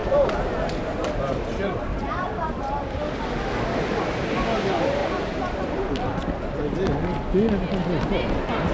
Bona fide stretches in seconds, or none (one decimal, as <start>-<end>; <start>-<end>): 2.5-8.7